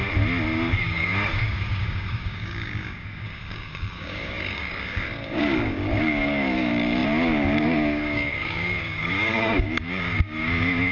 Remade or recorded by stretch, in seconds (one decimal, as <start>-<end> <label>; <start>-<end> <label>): 0.0-0.7 recorded; 0.7-10.9 remade